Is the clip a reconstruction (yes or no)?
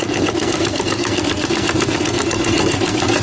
yes